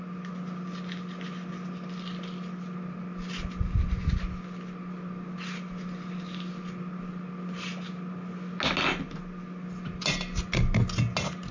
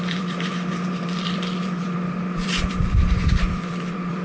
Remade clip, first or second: second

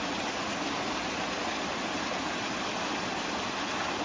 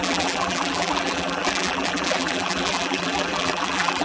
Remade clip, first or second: second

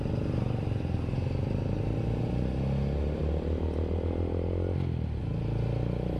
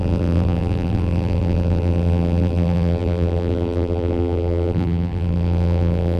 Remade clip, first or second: second